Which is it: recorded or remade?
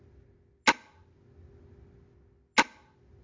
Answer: recorded